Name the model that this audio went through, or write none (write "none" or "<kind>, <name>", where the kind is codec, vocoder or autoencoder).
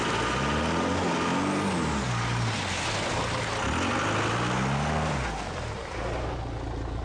none